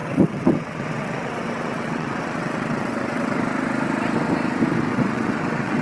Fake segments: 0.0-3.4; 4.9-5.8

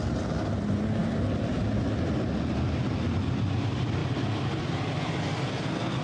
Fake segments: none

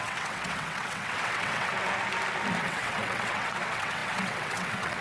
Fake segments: 0.0-1.7; 2.6-5.0

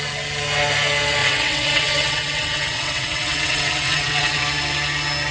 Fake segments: 1.2-4.4

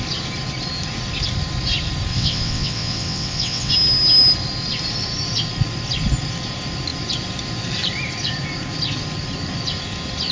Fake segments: 2.1-3.7